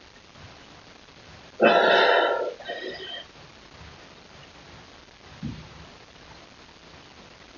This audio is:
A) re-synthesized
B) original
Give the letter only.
B